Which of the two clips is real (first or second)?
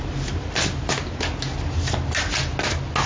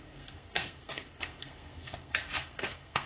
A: first